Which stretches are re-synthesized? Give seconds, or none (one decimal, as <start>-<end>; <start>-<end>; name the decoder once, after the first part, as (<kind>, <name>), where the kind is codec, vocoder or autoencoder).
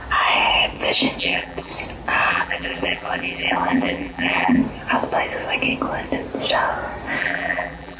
1.2-1.7 (vocoder, BigVGAN v2); 2.3-4.6; 7.2-8.0